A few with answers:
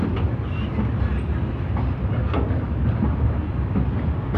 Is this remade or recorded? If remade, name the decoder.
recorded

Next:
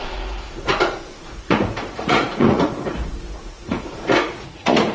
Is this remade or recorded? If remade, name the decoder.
remade, vocoder, Vocos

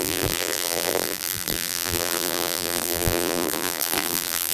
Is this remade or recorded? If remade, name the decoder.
remade, vocoder, BigVGAN v2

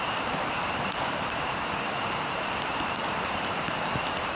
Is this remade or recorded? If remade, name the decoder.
remade, vocoder, BigVGAN v2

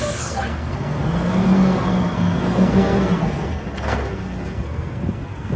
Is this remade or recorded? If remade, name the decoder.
remade, codec, SNAC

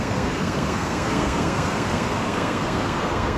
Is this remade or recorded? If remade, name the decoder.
remade, codec, SNAC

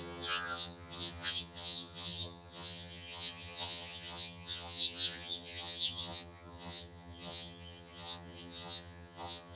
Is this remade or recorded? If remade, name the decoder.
remade, vocoder, HiFi-GAN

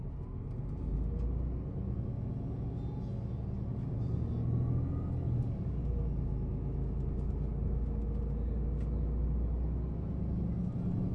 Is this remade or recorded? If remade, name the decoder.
recorded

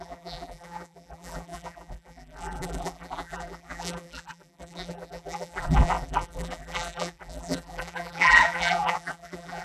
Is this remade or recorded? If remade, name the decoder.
remade, vocoder, BigVGAN v2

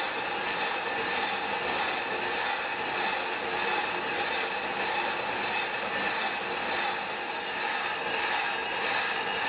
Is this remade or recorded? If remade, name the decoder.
recorded